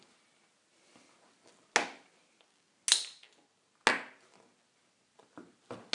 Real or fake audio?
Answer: real